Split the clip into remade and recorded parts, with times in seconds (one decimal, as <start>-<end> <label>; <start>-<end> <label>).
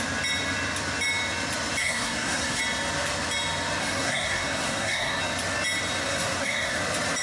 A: 0.0-1.8 recorded; 1.8-2.6 remade; 2.6-3.8 recorded; 3.8-5.2 remade; 5.2-6.0 recorded; 6.0-6.8 remade; 6.8-7.2 recorded